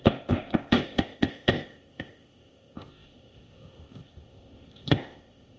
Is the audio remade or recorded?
remade